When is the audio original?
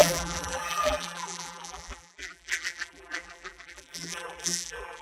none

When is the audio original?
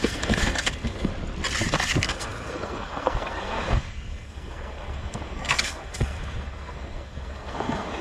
1.1-1.7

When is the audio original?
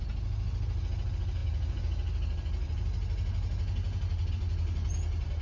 0.0-5.4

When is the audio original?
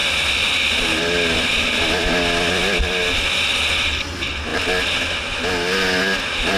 0.0-6.6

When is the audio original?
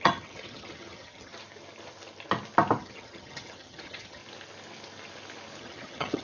1.3-2.8; 4.2-5.6